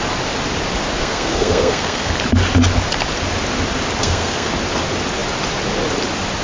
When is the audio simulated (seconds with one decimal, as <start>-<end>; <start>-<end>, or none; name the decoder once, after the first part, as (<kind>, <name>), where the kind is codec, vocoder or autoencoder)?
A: 1.0-2.1 (codec, SNAC); 4.0-4.5